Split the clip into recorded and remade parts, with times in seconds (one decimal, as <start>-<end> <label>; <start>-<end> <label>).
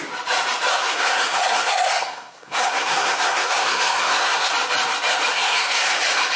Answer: 0.0-0.7 recorded; 0.7-4.5 remade; 4.5-5.3 recorded; 5.3-6.0 remade; 6.0-6.4 recorded